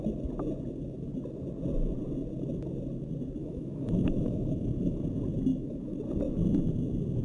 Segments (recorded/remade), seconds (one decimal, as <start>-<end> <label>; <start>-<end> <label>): 0.0-3.4 recorded; 3.4-5.0 remade; 5.0-5.5 recorded; 5.5-6.0 remade; 6.0-7.2 recorded